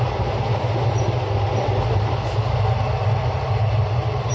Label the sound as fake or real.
real